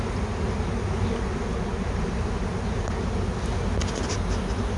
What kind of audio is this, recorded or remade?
recorded